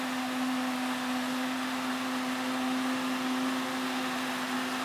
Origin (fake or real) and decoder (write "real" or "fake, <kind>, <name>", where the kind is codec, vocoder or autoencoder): real